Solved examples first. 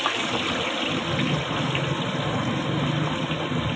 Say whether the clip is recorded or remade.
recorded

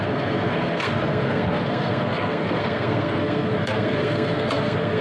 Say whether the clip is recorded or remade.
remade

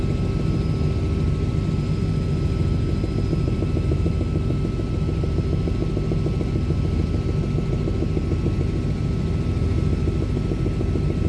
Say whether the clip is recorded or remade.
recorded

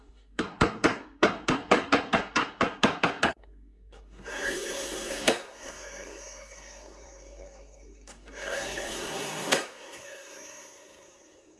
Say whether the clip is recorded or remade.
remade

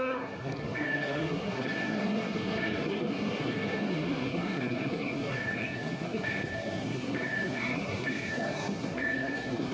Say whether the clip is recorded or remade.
remade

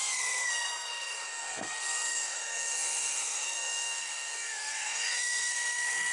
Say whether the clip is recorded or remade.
remade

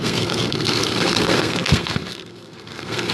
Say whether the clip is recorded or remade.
remade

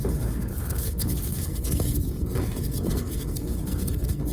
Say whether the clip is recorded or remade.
remade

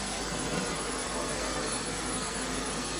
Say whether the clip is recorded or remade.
remade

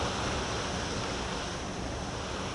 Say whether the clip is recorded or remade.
recorded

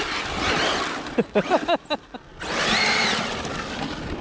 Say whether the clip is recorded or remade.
recorded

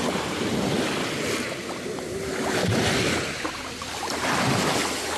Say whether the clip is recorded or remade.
recorded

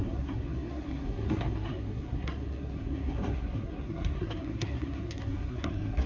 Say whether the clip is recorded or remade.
remade